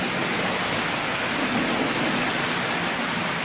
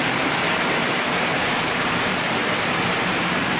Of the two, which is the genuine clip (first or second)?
first